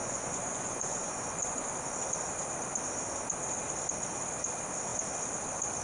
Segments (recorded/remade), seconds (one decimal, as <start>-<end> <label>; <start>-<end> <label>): 0.0-1.7 remade; 1.7-5.8 recorded